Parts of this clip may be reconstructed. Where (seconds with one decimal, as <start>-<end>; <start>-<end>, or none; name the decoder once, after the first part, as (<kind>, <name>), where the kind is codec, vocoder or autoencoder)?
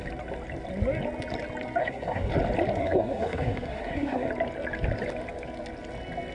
1.8-2.3 (codec, SNAC); 2.8-4.3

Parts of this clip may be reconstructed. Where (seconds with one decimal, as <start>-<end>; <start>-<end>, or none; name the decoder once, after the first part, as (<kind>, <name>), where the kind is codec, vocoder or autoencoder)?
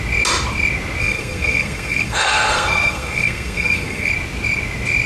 1.0-4.1 (codec, SNAC)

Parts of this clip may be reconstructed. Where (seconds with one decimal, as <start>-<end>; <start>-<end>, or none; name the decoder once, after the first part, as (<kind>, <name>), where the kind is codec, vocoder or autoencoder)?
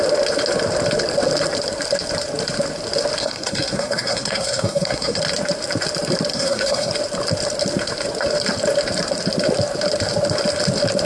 3.2-5.2 (codec, SNAC); 6.3-6.9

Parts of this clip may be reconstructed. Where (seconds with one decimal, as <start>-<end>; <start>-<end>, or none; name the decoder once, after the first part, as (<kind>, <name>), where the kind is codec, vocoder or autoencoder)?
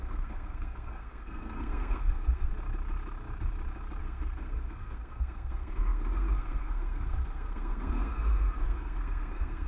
0.0-2.5 (codec, SNAC); 4.0-9.7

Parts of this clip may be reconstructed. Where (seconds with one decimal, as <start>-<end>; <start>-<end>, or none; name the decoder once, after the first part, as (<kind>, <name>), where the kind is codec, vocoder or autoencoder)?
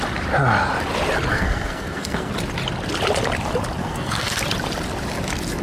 1.3-2.3 (codec, SNAC); 3.8-4.4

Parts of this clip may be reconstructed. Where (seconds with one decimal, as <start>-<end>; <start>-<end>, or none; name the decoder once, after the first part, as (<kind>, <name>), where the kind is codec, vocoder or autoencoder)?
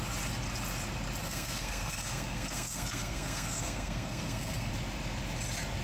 1.2-4.7 (codec, SNAC)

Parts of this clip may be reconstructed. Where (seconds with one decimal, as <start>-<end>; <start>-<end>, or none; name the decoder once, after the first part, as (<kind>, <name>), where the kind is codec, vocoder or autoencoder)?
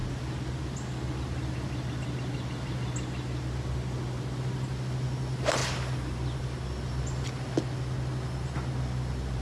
none